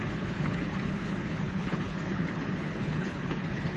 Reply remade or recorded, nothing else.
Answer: remade